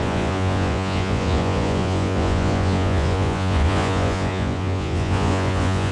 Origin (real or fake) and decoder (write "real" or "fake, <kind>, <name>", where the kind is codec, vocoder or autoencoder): fake, vocoder, Vocos